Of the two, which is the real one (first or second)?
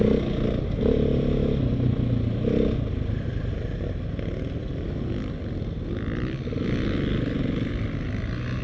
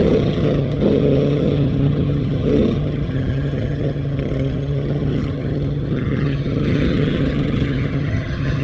first